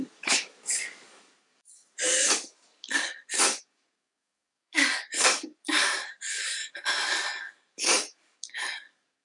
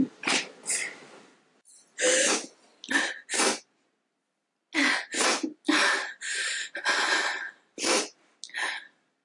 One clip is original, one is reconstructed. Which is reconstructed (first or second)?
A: first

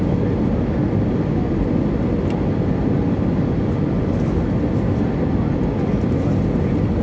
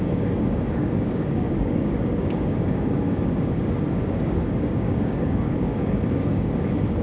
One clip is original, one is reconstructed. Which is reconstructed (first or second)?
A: second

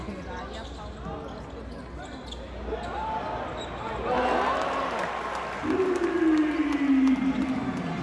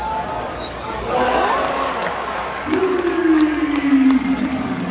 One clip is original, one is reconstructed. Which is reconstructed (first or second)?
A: second